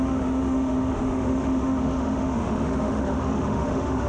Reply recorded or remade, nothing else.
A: remade